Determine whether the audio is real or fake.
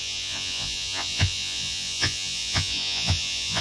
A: fake